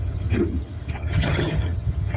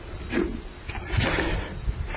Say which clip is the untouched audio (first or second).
second